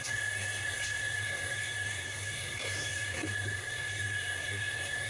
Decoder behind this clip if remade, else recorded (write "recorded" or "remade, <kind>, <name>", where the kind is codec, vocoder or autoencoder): remade, codec, SNAC